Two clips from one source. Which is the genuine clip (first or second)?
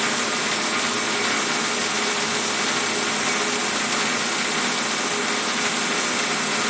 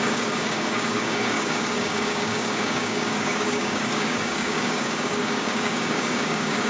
first